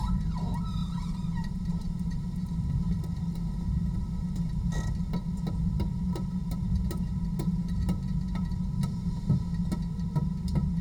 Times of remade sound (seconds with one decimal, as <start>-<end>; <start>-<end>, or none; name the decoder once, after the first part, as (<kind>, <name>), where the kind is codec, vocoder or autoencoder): 0.8-2.2 (vocoder, BigVGAN v2)